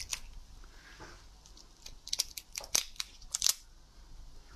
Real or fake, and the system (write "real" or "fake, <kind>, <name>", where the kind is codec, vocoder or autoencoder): real